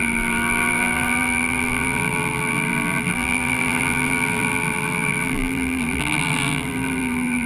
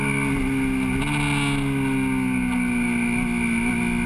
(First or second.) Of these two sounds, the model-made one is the first